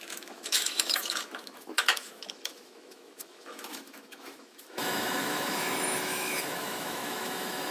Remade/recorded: remade